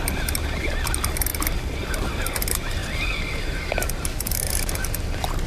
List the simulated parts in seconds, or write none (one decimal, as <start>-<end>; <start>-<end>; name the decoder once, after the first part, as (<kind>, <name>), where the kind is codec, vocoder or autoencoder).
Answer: 1.3-2.2 (vocoder, BigVGAN v2)